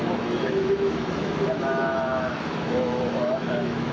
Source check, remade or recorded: remade